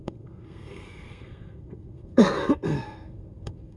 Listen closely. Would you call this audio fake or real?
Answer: fake